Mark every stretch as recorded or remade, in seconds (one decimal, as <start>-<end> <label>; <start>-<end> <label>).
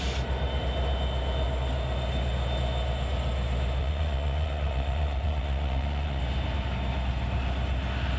0.0-3.8 recorded; 3.8-6.2 remade; 6.2-8.2 recorded